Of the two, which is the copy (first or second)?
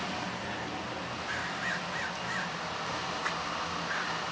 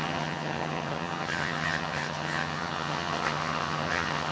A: second